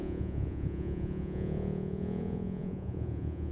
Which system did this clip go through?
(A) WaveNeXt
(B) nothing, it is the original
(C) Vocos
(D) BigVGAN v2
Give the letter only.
C